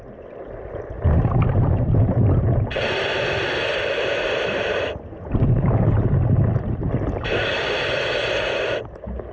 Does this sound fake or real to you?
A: real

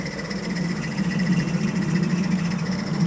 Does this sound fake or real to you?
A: real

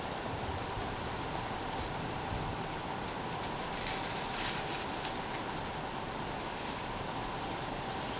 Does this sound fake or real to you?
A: real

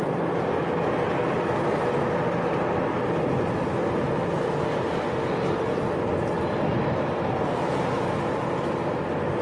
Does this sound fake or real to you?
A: real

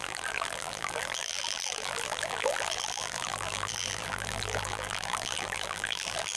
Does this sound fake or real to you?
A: fake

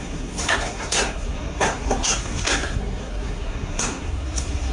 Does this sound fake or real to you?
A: fake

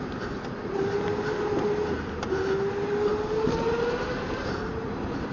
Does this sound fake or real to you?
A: real